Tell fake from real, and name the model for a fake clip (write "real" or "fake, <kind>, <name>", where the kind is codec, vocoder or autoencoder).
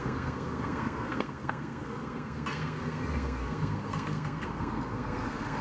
fake, codec, SNAC